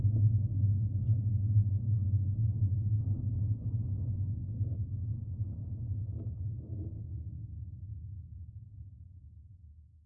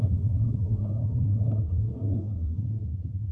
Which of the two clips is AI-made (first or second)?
second